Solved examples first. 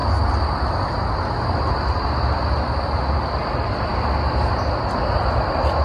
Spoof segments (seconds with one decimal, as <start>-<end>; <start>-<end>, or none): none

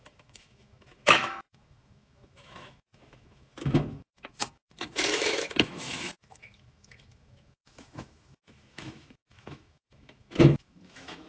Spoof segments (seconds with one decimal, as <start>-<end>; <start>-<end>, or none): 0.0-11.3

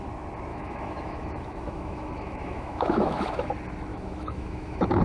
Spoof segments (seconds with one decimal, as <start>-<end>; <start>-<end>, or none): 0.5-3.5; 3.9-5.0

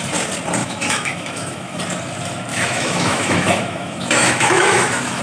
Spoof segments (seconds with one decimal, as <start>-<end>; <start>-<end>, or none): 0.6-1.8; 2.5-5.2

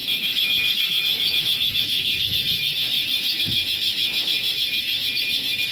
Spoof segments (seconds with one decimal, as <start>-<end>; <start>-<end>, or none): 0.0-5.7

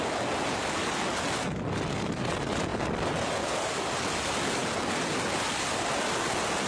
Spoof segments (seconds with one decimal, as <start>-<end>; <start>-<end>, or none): none

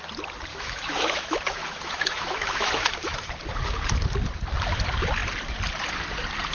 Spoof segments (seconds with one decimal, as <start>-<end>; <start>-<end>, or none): 0.5-3.3

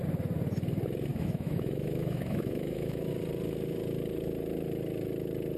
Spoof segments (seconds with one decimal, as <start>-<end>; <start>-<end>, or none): 1.1-3.1